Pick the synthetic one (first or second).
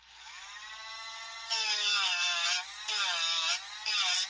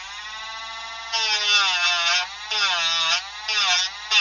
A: first